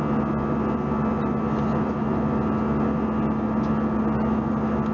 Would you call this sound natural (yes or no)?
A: yes